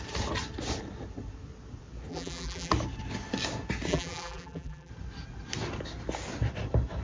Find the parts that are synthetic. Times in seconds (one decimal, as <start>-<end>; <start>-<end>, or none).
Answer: 2.1-2.7; 3.9-4.9

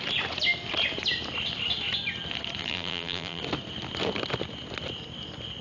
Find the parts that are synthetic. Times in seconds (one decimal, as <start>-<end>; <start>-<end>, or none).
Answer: 2.6-3.4

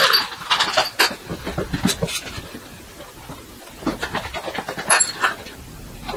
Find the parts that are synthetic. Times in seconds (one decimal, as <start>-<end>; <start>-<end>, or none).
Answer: none